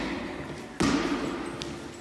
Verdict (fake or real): real